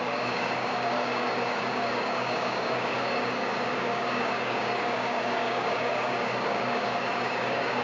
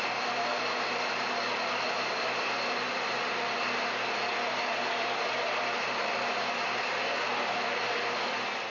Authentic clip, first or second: second